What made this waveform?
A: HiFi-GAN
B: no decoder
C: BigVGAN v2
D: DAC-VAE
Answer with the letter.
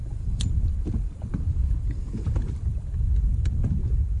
C